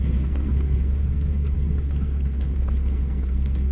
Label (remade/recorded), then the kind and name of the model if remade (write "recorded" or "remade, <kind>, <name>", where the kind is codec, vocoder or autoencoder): remade, codec, SNAC